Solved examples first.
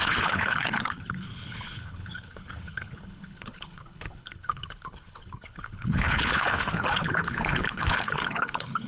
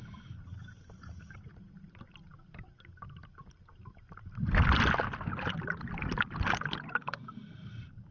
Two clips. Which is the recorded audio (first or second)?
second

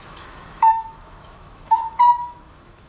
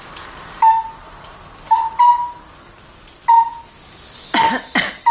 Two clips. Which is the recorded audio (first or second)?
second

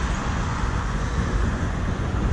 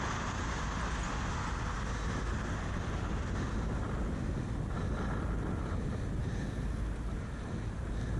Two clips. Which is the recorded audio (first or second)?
second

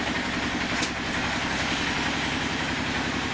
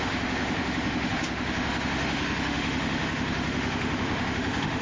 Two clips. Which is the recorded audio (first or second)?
first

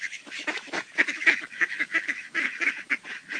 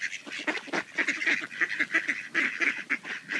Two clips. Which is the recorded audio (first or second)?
second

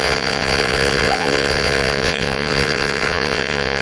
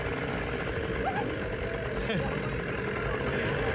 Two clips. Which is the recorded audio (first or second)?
second